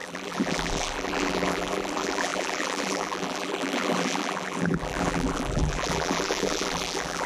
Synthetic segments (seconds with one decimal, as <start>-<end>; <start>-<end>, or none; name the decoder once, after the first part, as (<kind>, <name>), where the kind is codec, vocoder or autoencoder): 0.0-7.3 (vocoder, BigVGAN v2)